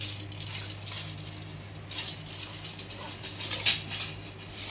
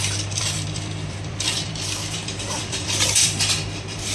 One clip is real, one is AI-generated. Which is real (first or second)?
first